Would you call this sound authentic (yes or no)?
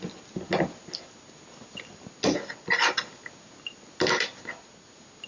yes